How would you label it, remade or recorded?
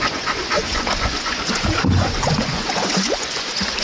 remade